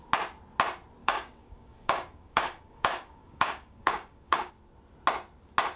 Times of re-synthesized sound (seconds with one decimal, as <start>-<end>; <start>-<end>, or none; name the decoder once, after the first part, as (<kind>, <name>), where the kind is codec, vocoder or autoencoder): 1.0-4.5 (codec, DAC)